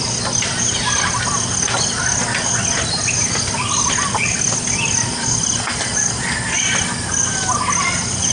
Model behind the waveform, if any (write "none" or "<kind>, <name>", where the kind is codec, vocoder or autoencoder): none